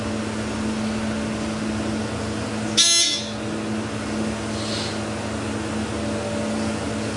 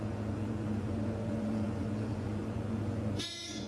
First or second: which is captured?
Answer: first